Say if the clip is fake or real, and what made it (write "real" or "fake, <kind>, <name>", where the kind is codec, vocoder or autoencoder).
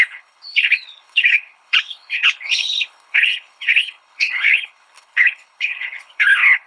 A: fake, codec, HILCodec